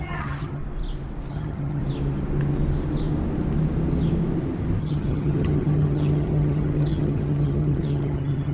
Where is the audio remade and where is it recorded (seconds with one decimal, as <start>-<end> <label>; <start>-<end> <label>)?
0.0-0.6 remade; 0.6-1.3 recorded; 1.3-1.8 remade; 1.8-4.8 recorded; 4.8-8.5 remade